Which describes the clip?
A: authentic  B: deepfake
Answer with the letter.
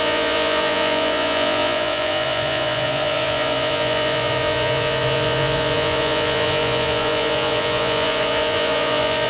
B